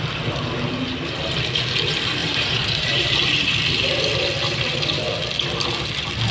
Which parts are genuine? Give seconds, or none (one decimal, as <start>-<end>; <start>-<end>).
0.0-2.2; 3.1-6.3